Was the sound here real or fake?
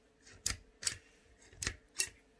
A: fake